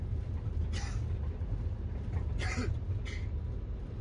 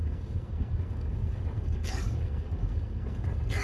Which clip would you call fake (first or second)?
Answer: second